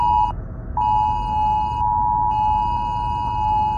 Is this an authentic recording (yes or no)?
no